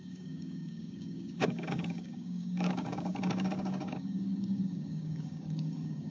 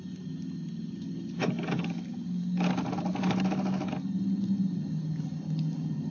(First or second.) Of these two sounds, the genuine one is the second